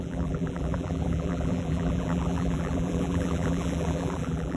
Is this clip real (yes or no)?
no